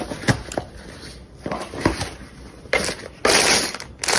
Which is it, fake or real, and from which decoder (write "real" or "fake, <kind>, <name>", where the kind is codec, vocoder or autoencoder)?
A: real